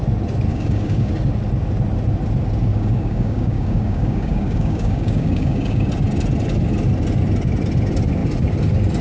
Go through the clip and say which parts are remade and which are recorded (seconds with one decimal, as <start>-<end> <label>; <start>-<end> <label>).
0.0-0.5 recorded; 0.5-1.1 remade; 1.1-2.7 recorded; 2.7-5.9 remade; 5.9-9.0 recorded